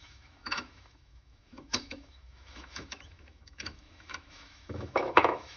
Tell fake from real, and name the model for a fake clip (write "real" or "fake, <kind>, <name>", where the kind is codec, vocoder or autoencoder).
fake, autoencoder, DAC-VAE